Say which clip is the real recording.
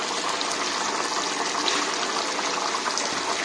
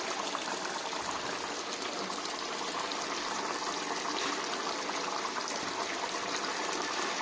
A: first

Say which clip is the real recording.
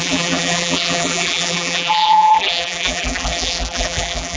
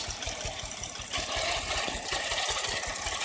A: second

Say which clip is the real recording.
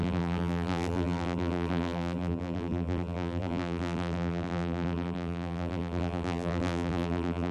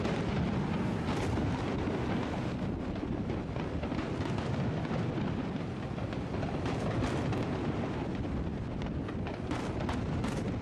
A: second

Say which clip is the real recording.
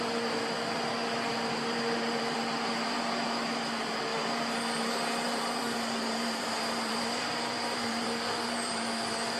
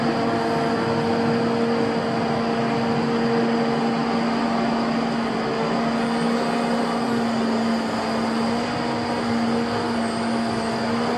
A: second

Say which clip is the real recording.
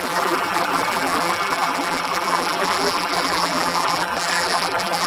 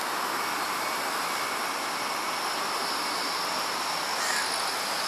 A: second